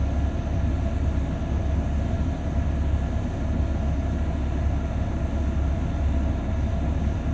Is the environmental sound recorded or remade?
recorded